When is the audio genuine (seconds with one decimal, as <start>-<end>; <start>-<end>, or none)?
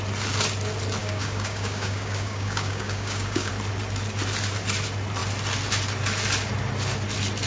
0.0-1.0; 3.5-7.5